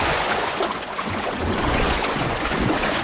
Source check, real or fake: fake